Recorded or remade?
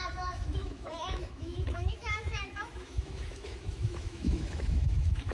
remade